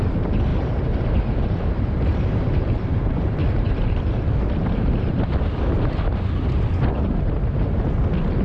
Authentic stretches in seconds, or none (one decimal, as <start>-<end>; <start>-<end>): 0.0-0.5; 5.3-8.4